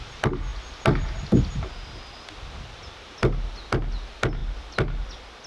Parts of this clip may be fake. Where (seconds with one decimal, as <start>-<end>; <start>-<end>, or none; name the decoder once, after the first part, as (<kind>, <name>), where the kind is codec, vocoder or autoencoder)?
0.5-1.5 (vocoder, BigVGAN v2); 4.4-5.1